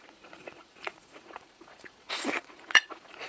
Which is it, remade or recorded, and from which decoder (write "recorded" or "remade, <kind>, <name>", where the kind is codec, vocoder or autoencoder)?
remade, vocoder, Vocos